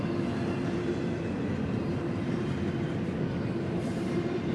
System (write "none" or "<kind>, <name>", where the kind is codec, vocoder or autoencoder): none